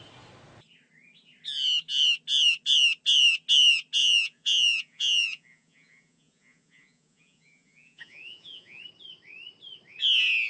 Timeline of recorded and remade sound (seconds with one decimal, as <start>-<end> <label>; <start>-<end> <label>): 0.0-4.0 recorded; 4.0-8.8 remade; 8.8-10.5 recorded